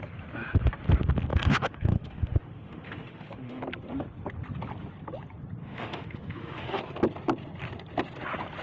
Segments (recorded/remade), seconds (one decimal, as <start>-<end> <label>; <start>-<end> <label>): 0.0-1.3 recorded; 1.3-3.6 remade; 3.6-5.6 recorded; 5.6-6.8 remade; 6.8-8.6 recorded